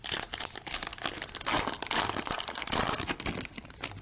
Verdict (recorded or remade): recorded